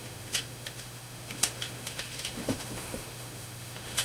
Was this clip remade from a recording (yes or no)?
yes